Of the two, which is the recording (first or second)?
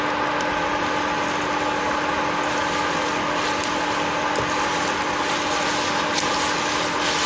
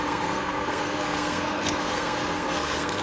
first